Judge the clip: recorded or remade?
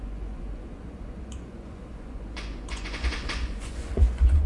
remade